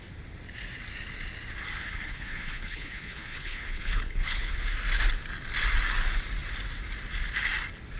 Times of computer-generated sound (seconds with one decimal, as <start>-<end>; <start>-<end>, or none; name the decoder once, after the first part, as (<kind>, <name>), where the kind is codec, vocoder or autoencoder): 1.8-4.6 (codec, HILCodec)